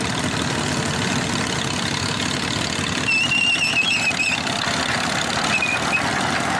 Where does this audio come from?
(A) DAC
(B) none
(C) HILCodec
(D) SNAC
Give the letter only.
B